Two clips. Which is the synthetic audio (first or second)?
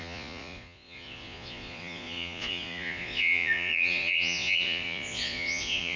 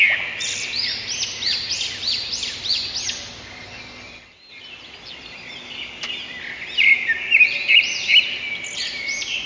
first